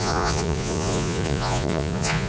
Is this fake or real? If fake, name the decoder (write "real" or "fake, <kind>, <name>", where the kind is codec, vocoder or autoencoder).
fake, vocoder, Vocos